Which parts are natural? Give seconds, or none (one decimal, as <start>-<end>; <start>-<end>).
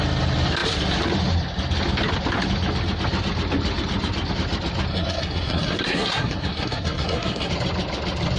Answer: 0.0-4.9; 7.5-8.4